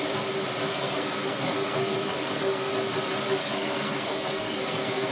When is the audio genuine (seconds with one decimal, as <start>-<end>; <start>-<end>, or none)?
0.0-0.7; 2.7-3.4